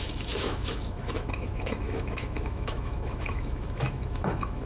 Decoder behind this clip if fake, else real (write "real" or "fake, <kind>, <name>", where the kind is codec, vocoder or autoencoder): fake, autoencoder, DAC-VAE